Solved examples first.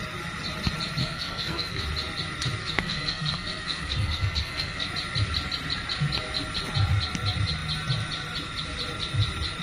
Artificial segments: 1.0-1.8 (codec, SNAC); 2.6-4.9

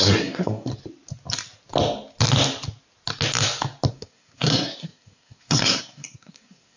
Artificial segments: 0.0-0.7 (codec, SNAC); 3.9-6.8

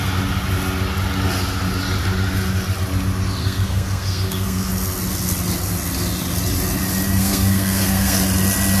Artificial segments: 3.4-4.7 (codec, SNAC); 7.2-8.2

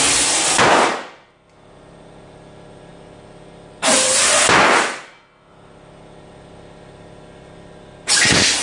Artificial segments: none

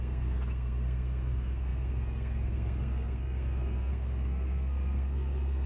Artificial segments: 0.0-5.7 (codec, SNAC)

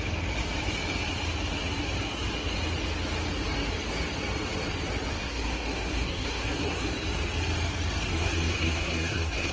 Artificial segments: 5.1-6.9 (codec, SNAC); 8.1-9.5